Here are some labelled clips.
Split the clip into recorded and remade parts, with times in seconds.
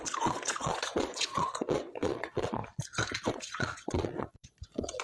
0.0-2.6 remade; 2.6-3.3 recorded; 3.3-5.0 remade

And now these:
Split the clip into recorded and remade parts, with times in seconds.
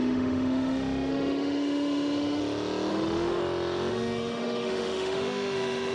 0.0-2.4 remade; 2.4-2.9 recorded; 2.9-3.4 remade; 3.4-3.9 recorded; 3.9-5.9 remade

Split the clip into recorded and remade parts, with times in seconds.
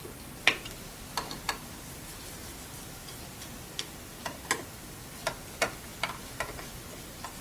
0.0-7.4 recorded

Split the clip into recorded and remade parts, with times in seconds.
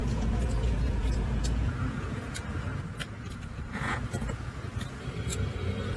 0.0-6.0 remade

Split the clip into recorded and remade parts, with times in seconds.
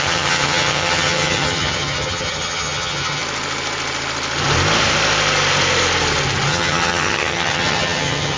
0.0-3.2 remade; 3.2-6.5 recorded; 6.5-8.4 remade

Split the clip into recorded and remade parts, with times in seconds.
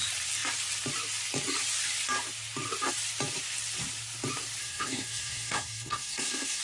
0.0-4.6 recorded; 4.6-6.6 remade